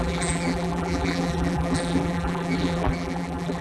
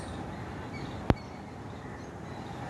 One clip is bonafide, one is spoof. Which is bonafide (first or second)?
second